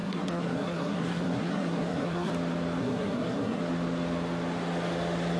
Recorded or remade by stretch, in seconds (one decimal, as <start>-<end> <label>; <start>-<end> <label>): 0.0-2.3 remade; 2.3-2.8 recorded; 2.8-3.6 remade; 3.6-5.4 recorded